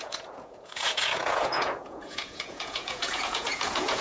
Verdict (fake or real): fake